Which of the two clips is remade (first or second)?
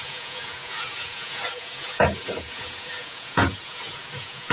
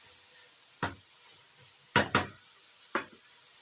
first